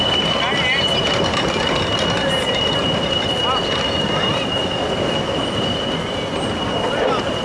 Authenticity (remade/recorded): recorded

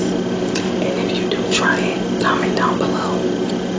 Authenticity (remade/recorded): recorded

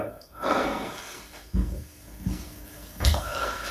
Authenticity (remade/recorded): remade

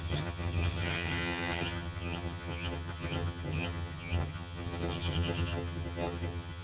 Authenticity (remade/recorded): remade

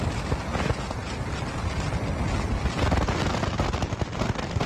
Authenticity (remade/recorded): recorded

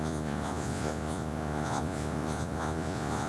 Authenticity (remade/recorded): remade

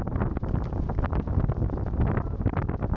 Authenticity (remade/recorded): recorded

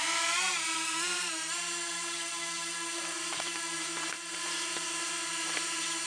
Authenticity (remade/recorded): remade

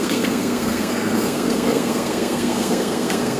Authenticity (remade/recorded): remade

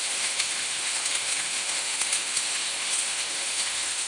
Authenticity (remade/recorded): remade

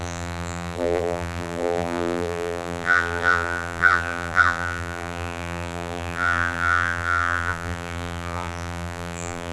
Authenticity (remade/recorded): remade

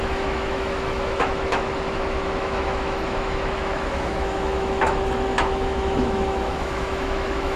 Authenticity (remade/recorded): remade